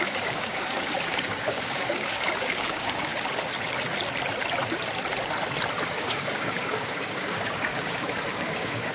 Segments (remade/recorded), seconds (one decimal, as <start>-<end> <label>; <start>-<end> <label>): 0.0-3.1 remade; 3.1-6.0 recorded; 6.0-8.9 remade